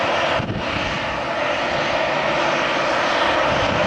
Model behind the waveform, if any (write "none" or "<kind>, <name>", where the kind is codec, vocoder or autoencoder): none